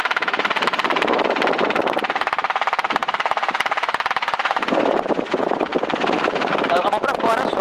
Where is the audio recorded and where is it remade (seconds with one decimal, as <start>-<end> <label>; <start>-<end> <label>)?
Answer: 0.0-5.7 recorded; 5.7-6.9 remade; 6.9-7.6 recorded